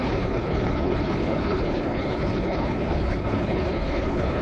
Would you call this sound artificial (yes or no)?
yes